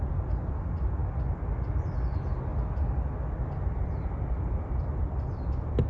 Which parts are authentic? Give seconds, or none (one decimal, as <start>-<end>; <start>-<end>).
0.0-5.9